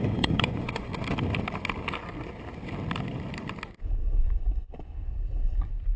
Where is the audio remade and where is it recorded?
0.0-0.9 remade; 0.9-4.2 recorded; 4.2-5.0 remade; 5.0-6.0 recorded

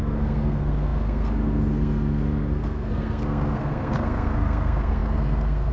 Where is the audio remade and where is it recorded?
0.0-5.7 remade

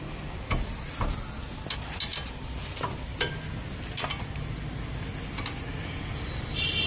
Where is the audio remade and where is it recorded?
0.0-6.9 recorded